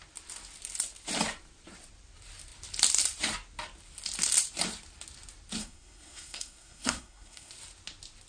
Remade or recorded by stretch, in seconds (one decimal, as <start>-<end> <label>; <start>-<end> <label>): 0.0-5.6 recorded; 5.6-7.5 remade; 7.5-8.3 recorded